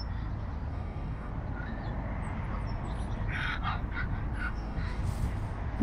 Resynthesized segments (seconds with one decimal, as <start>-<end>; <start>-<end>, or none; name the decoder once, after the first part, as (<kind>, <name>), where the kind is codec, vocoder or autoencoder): 0.7-1.3 (codec, DAC); 4.4-5.0